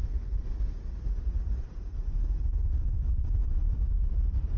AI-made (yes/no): no